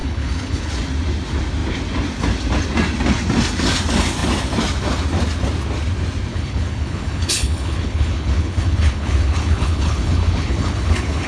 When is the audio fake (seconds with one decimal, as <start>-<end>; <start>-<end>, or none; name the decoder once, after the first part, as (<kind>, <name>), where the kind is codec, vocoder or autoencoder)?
0.0-0.7 (codec, HILCodec); 6.3-11.3